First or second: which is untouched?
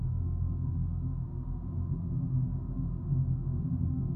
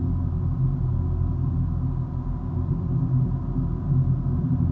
second